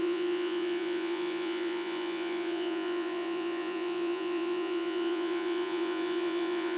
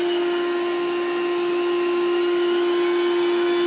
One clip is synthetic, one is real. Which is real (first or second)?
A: second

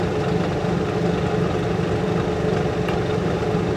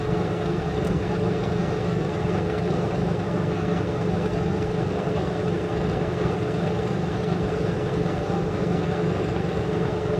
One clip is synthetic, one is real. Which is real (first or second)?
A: first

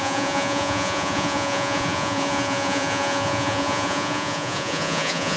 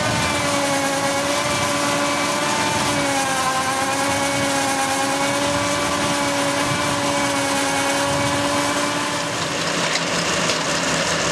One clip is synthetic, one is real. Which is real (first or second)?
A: second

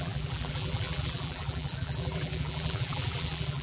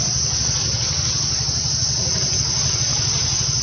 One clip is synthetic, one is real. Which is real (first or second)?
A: second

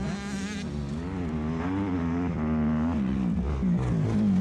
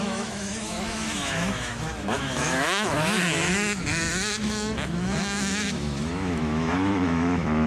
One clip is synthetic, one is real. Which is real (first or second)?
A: first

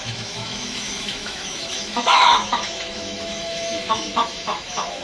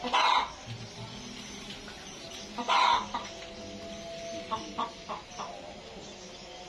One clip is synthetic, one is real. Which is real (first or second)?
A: second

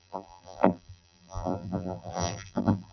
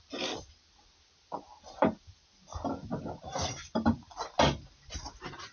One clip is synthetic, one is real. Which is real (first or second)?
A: second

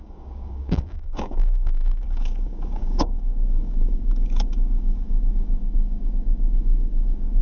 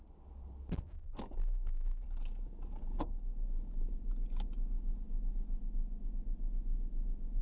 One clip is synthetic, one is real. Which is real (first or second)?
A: second